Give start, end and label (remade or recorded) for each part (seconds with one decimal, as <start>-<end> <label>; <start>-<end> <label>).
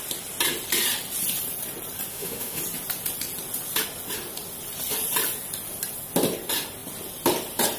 0.0-2.1 recorded; 2.1-2.6 remade; 2.6-7.8 recorded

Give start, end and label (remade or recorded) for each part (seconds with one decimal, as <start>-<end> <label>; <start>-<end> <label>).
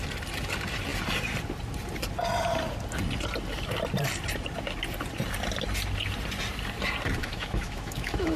0.0-7.2 recorded; 7.2-8.4 remade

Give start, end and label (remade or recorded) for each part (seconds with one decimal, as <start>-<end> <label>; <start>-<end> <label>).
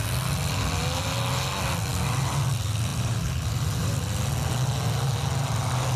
0.0-6.0 recorded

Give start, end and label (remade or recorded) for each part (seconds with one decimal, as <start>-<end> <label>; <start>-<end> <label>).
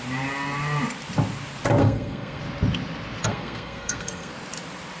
0.0-1.8 recorded; 1.8-2.4 remade; 2.4-3.3 recorded; 3.3-4.3 remade; 4.3-5.0 recorded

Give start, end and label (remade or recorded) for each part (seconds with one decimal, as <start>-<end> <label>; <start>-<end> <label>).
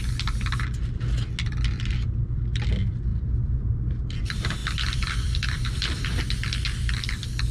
0.0-3.1 recorded; 3.1-3.7 remade; 3.7-4.6 recorded; 4.6-6.2 remade; 6.2-7.5 recorded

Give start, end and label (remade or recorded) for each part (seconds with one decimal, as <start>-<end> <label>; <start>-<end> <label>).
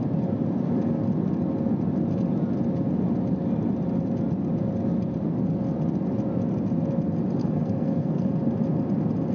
0.0-7.4 recorded; 7.4-8.3 remade; 8.3-9.3 recorded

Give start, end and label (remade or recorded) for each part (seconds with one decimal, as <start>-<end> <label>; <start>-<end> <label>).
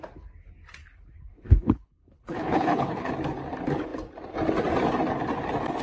0.0-0.8 recorded; 0.8-3.1 remade; 3.1-5.8 recorded